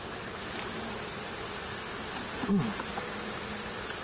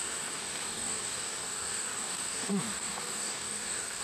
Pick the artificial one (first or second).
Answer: second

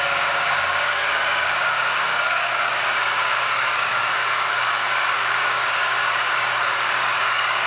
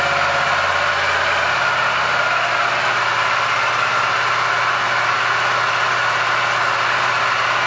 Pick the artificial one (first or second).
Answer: first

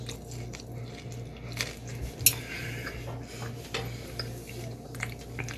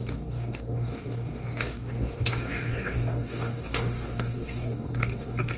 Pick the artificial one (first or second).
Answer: second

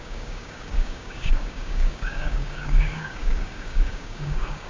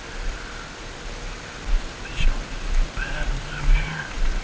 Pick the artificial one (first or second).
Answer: first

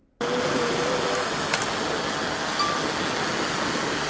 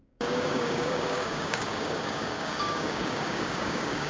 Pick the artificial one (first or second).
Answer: second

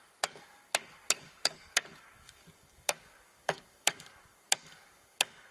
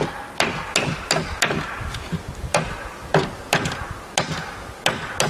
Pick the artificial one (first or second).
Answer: first